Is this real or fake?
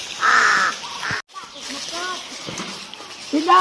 real